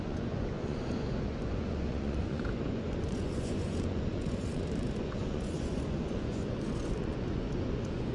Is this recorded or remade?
remade